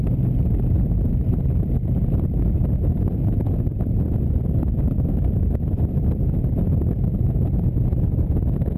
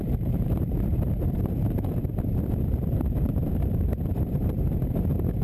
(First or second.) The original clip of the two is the first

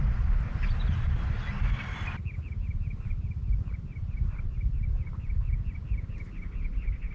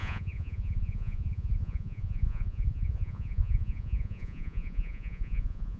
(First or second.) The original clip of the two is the first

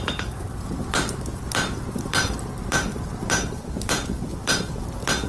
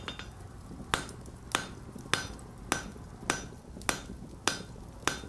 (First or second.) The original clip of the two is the second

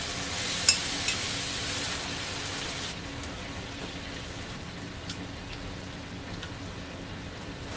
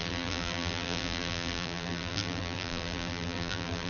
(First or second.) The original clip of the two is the first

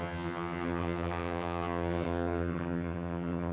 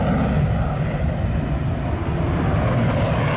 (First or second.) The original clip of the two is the second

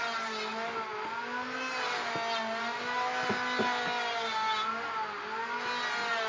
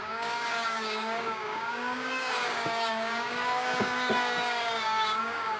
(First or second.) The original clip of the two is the first